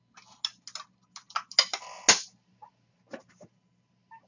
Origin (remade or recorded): recorded